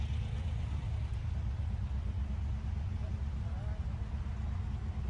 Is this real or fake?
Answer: real